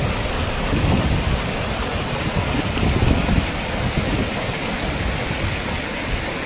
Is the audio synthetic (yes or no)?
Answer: no